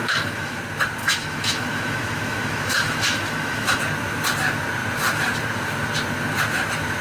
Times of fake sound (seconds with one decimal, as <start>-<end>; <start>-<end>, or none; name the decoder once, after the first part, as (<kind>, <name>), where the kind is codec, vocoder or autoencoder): 0.0-0.6 (autoencoder, DAC-VAE); 1.0-3.8

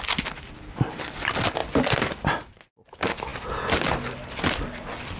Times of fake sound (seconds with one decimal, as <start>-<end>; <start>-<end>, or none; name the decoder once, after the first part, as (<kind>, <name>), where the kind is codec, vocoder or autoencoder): none

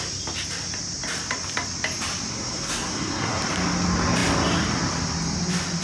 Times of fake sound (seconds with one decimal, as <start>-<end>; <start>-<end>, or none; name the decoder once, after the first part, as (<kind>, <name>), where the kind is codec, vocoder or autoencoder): 2.3-3.4 (codec, SNAC)